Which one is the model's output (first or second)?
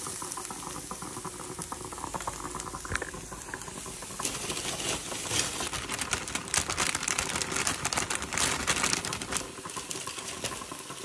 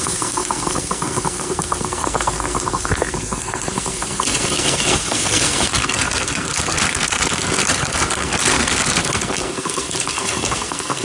second